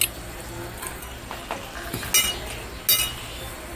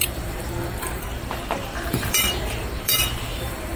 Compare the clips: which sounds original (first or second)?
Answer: first